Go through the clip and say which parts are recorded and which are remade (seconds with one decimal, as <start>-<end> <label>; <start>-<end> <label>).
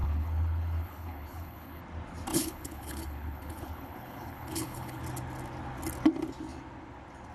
0.0-1.8 remade; 1.8-2.3 recorded; 2.3-5.0 remade; 5.0-7.3 recorded